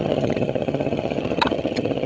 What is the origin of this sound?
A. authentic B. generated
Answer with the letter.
B